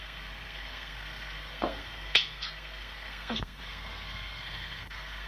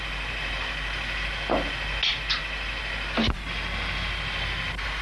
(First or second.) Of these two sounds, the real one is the second